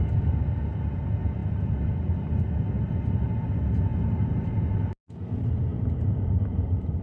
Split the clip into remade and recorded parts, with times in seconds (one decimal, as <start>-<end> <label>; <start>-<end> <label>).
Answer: 0.0-7.0 recorded